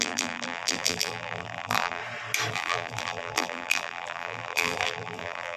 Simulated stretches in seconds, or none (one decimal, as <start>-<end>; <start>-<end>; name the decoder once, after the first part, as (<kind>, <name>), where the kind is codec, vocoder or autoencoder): 0.0-2.0 (vocoder, BigVGAN v2); 2.5-5.6